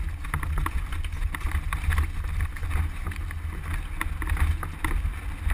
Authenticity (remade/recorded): recorded